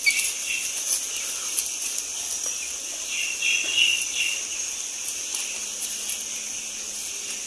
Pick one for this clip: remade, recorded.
recorded